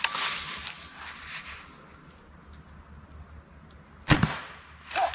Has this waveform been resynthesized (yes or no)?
no